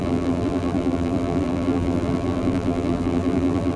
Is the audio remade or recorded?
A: remade